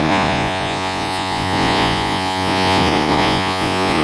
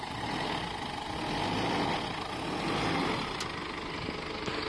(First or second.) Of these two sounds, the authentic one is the second